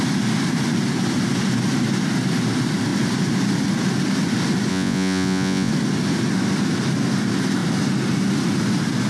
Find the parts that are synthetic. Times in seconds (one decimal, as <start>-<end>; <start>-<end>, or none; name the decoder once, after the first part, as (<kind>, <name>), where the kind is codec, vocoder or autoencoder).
4.7-5.7 (vocoder, Vocos)